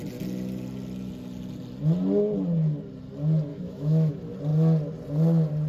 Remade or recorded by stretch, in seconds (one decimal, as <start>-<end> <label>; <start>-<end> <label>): 0.0-3.5 recorded; 3.5-4.1 remade; 4.1-5.7 recorded